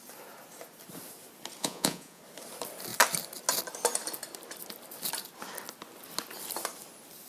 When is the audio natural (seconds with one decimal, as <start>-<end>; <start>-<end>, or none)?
0.0-1.6; 2.2-7.3